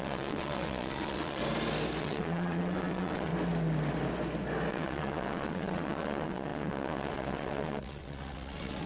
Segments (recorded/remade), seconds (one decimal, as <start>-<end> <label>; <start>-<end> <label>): 0.0-1.4 remade; 1.4-2.0 recorded; 2.0-3.3 remade; 3.3-4.7 recorded; 4.7-8.9 remade